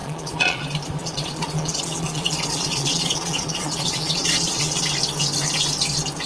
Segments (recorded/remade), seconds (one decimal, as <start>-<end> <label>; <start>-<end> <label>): 0.0-0.6 remade; 0.6-1.0 recorded; 1.0-4.8 remade; 4.8-6.3 recorded

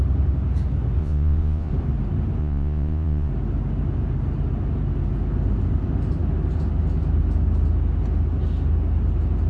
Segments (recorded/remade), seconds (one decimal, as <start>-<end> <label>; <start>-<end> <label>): 0.0-1.0 recorded; 1.0-1.7 remade; 1.7-2.4 recorded; 2.4-3.3 remade; 3.3-9.5 recorded

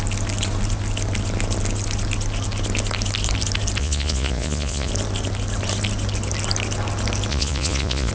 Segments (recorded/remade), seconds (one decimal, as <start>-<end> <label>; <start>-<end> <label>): 0.0-3.8 recorded; 3.8-4.9 remade; 4.9-7.3 recorded; 7.3-8.1 remade

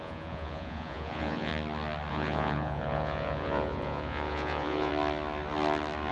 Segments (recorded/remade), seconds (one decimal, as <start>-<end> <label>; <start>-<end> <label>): 0.0-1.5 remade; 1.5-2.1 recorded; 2.1-4.9 remade; 4.9-6.1 recorded

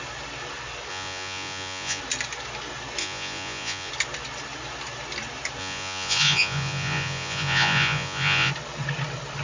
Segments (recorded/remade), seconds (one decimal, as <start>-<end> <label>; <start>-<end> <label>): 0.0-0.9 recorded; 0.9-2.0 remade; 2.0-3.0 recorded; 3.0-3.9 remade; 3.9-5.6 recorded; 5.6-8.5 remade; 8.5-9.4 recorded